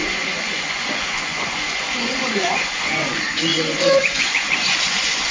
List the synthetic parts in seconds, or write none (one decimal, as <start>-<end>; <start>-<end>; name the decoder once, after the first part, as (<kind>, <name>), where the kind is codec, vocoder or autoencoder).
0.0-5.3 (vocoder, Vocos)